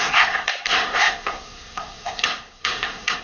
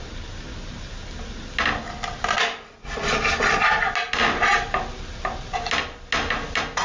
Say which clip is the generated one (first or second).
first